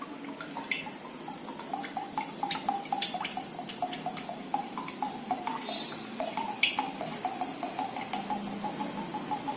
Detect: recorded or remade recorded